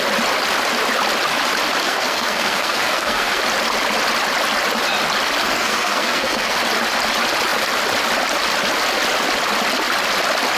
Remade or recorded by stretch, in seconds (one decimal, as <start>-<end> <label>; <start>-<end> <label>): 0.0-1.8 recorded; 1.8-3.4 remade; 3.4-5.4 recorded; 5.4-6.6 remade; 6.6-10.6 recorded